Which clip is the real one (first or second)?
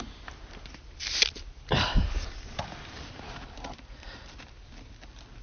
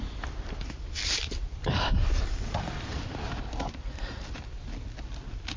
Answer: first